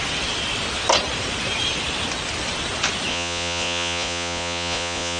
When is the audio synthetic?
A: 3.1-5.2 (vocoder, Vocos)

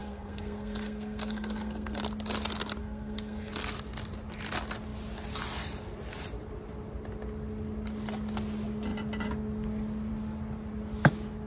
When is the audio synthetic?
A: 0.0-2.0 (codec, SNAC); 2.8-3.5

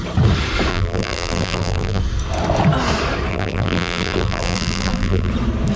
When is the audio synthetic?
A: 0.7-2.0 (vocoder, BigVGAN v2); 3.3-5.3

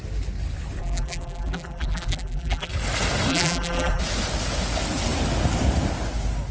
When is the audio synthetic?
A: 0.8-2.7 (vocoder, BigVGAN v2); 3.3-4.0

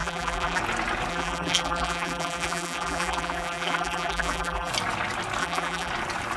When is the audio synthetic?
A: 0.0-0.6 (vocoder, BigVGAN v2); 1.1-4.7; 5.4-5.9

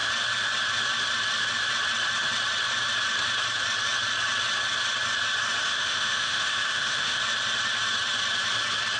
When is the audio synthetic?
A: 5.6-7.2 (autoencoder, DAC-VAE)

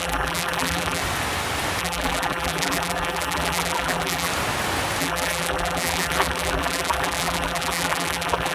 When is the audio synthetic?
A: 0.0-1.0 (vocoder, BigVGAN v2); 1.8-4.3; 5.0-8.5

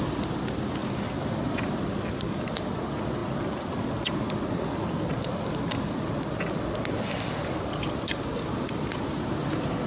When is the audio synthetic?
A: none